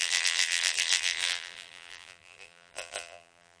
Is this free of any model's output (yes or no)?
no